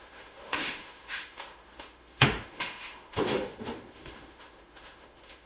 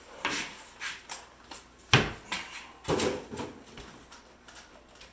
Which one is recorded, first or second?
second